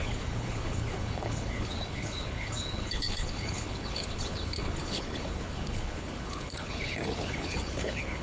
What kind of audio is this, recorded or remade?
remade